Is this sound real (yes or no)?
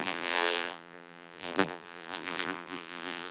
no